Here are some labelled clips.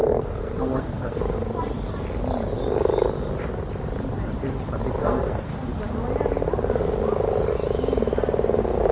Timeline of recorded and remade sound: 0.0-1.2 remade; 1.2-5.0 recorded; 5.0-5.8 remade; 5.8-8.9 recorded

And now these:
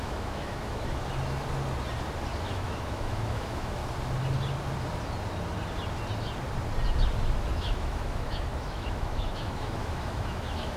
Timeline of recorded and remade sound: 0.0-1.0 remade; 1.0-2.4 recorded; 2.4-3.8 remade; 3.8-7.5 recorded; 7.5-10.8 remade

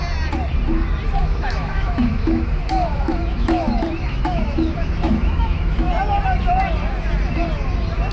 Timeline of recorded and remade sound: 0.0-1.2 recorded; 1.2-5.9 remade; 5.9-8.1 recorded

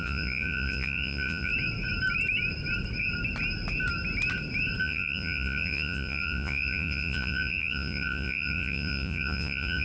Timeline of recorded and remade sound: 0.0-1.5 remade; 1.5-4.8 recorded; 4.8-9.8 remade